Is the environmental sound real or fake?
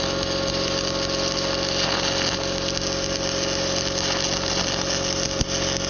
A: real